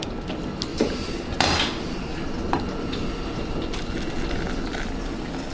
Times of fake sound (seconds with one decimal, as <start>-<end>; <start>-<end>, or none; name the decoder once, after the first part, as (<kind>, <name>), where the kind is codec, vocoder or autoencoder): none